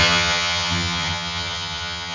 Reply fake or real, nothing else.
fake